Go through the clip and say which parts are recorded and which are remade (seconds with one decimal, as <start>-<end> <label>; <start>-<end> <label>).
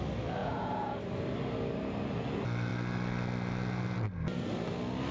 0.0-0.4 recorded; 0.4-1.0 remade; 1.0-5.1 recorded